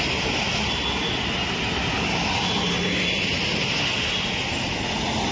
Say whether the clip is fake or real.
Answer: real